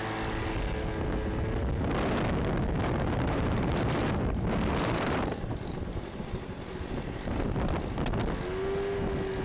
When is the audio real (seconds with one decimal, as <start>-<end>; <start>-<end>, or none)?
0.0-2.8; 7.7-9.4